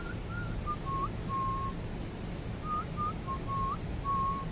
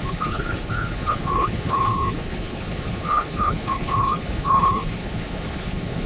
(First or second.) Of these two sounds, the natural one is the first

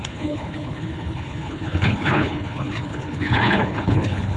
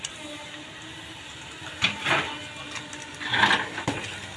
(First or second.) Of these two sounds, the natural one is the second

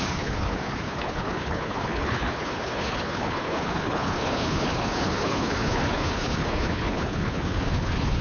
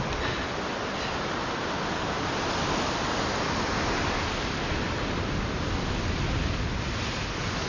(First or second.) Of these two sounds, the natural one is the second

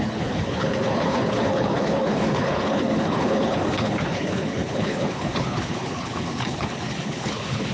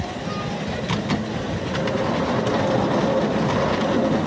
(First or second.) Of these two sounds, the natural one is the second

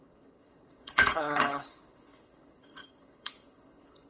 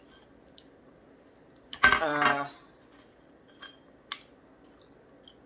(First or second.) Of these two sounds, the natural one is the second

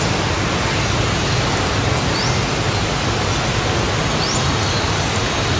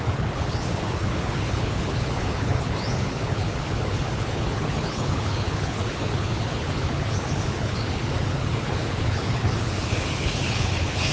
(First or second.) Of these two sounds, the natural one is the first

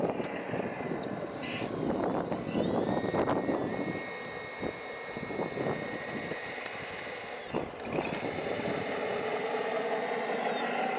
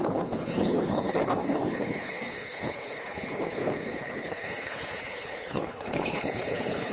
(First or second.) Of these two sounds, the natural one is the first